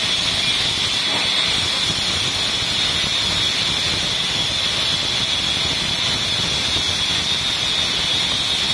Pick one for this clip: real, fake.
real